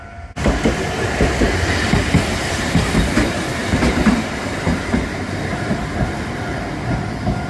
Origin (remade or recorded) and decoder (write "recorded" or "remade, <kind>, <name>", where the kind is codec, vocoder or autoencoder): recorded